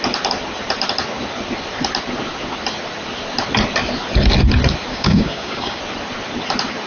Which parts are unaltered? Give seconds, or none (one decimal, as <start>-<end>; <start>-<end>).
0.0-4.9; 5.8-6.9